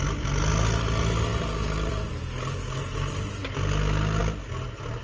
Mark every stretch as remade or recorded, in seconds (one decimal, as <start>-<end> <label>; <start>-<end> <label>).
0.0-5.0 recorded